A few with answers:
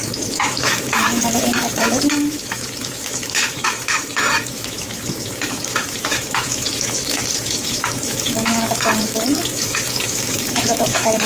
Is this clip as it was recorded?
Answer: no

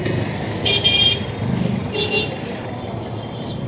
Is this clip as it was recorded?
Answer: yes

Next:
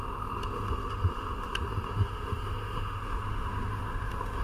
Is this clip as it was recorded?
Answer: no